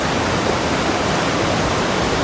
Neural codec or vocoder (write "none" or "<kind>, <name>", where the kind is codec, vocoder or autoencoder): none